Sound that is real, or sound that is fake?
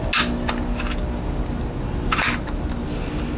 real